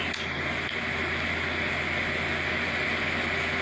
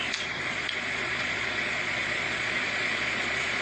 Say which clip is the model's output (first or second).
second